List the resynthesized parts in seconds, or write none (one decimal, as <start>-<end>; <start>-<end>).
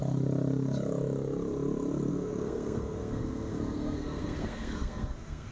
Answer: 2.1-5.5